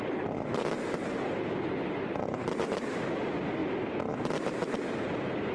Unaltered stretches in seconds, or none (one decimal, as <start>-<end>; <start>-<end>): 0.0-1.0; 2.4-5.5